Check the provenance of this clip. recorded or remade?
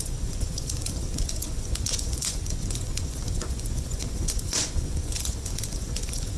remade